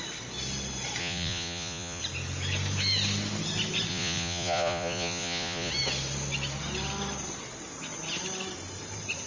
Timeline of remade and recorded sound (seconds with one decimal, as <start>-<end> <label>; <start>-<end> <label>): 0.0-1.0 recorded; 1.0-2.0 remade; 2.0-3.9 recorded; 3.9-5.7 remade; 5.7-9.3 recorded